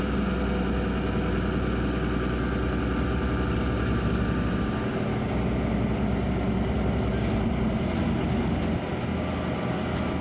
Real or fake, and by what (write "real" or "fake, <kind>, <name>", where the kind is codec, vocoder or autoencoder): real